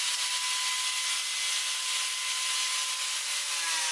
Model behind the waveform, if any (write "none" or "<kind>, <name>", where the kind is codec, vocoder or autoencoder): none